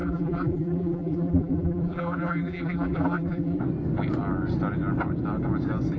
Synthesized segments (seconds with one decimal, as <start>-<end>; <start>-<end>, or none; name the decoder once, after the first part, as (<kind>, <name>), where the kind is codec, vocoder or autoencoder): 0.0-3.6 (vocoder, BigVGAN v2)